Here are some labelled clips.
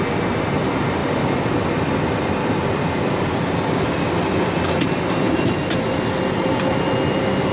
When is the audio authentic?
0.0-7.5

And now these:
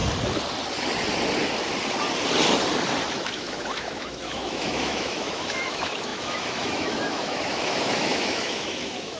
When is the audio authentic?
0.0-3.1

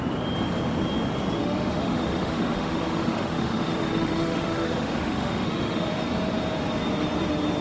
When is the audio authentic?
0.0-1.4; 6.0-7.6